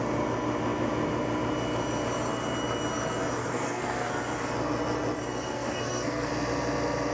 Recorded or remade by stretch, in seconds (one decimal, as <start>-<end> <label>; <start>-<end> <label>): 0.0-3.4 recorded; 3.4-4.1 remade; 4.1-5.5 recorded; 5.5-6.3 remade; 6.3-7.1 recorded